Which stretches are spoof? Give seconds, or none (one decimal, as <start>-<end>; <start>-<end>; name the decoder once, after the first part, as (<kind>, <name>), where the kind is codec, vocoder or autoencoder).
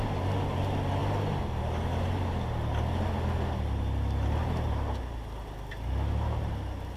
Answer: none